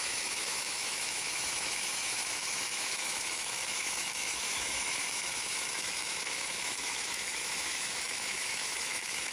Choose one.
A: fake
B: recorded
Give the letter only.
A